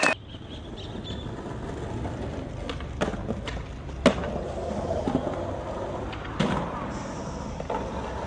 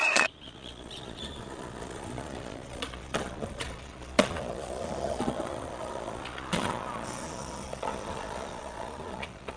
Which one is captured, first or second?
first